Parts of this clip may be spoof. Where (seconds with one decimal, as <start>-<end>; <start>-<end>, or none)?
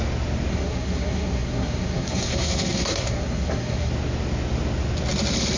0.5-3.9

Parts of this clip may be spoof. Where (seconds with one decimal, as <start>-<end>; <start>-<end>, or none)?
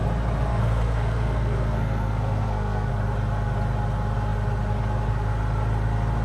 0.5-2.9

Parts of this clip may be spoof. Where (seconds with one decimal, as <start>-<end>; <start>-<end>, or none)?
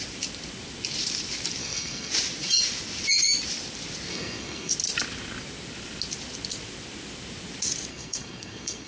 1.6-2.1; 4.1-4.7; 7.9-8.9